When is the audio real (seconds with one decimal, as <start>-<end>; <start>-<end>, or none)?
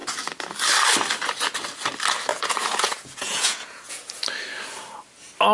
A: 0.0-2.3; 4.1-5.5